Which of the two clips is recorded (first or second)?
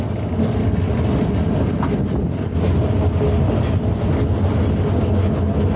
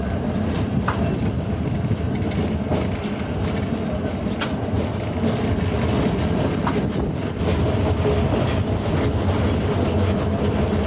first